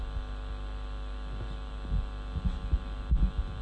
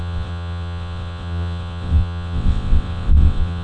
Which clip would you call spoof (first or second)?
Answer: second